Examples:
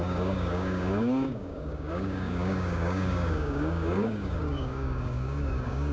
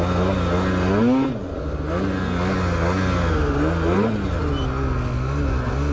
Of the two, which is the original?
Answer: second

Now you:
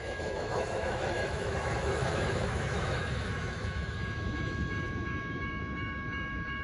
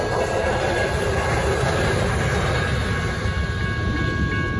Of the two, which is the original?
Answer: second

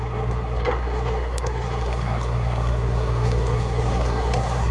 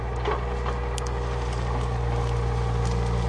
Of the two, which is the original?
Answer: second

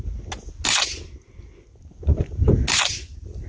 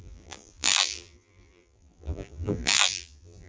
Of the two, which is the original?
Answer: first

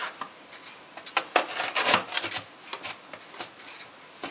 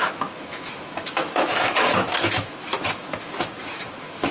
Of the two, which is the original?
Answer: first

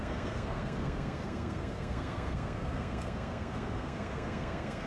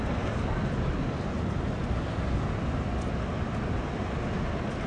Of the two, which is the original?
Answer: second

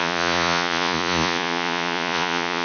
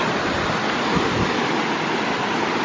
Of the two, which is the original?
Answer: second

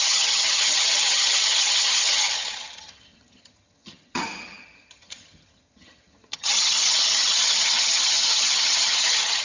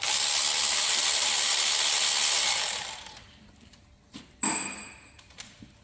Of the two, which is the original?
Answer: second